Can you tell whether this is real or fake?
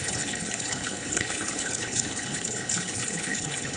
fake